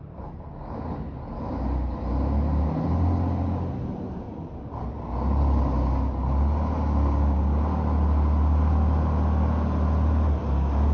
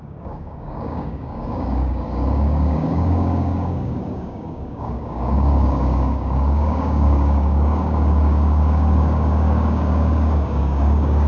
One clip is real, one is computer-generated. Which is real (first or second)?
first